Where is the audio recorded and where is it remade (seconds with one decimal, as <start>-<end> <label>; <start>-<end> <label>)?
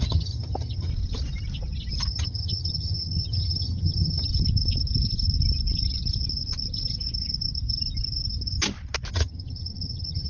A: 0.0-0.9 remade; 0.9-2.1 recorded; 2.1-4.3 remade; 4.3-9.1 recorded; 9.1-10.3 remade